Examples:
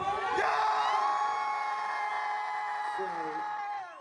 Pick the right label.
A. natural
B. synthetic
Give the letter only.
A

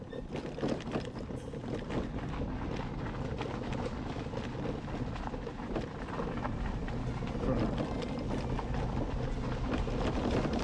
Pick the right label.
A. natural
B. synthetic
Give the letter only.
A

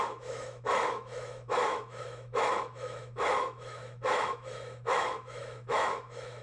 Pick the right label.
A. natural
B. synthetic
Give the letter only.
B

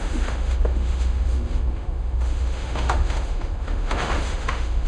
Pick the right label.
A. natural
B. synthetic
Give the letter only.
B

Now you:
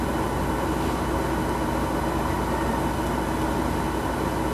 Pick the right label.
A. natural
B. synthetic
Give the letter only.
A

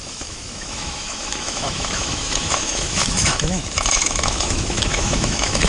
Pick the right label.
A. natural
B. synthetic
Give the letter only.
B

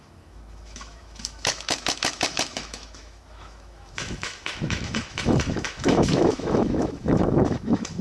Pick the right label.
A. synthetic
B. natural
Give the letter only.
A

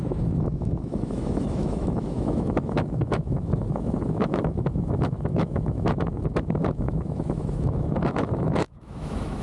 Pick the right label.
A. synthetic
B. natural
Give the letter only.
A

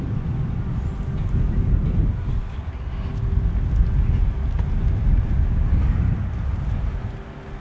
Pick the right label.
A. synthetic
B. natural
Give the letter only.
B